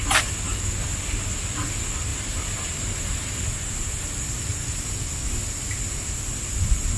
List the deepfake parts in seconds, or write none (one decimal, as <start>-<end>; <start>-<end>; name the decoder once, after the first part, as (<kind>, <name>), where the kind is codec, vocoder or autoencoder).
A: 2.1-4.9 (vocoder, BigVGAN v2)